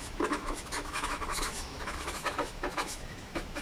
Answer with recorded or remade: remade